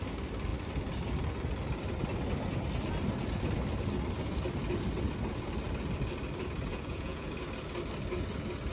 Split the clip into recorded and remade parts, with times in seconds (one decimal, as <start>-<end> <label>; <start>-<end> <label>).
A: 0.0-6.7 recorded; 6.7-7.3 remade; 7.3-8.7 recorded